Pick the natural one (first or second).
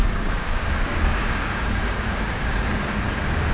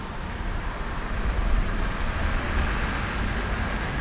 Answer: second